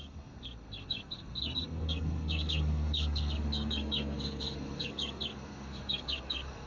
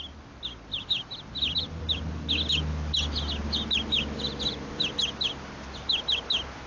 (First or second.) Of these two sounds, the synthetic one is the first